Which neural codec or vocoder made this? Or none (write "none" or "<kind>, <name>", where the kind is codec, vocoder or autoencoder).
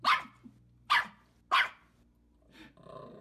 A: none